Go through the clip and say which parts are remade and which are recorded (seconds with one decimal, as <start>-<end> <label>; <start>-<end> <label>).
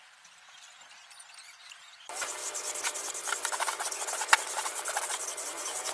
0.0-5.9 recorded